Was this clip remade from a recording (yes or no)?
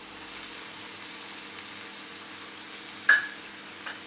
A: no